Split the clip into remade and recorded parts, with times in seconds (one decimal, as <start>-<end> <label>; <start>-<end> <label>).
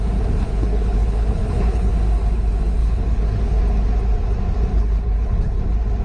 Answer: 0.0-0.4 recorded; 0.4-1.9 remade; 1.9-2.8 recorded; 2.8-3.6 remade; 3.6-4.7 recorded; 4.7-5.6 remade; 5.6-6.0 recorded